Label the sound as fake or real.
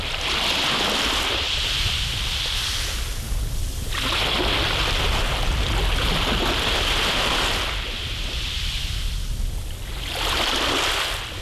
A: real